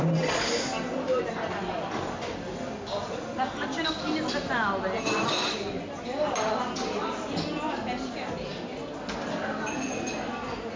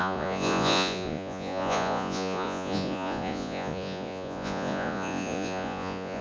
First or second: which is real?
first